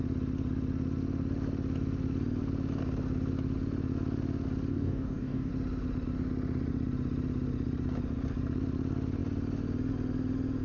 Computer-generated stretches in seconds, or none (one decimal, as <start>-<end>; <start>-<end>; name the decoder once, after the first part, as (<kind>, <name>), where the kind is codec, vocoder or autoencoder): 4.7-5.5 (codec, DAC)